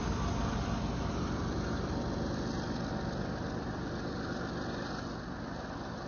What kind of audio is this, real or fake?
real